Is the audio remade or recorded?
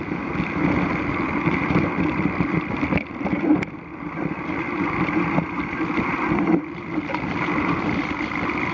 recorded